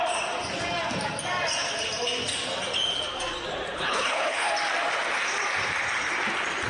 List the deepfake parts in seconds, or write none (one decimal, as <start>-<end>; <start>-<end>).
3.7-4.5